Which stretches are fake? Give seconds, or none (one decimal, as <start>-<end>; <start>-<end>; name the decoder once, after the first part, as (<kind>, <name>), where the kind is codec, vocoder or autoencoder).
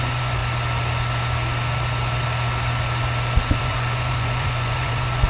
0.0-0.4 (vocoder, Vocos); 3.6-5.3